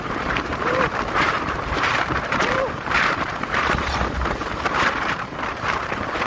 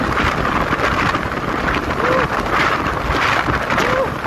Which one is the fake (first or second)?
first